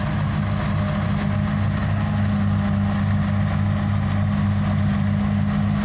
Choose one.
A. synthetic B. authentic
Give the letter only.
B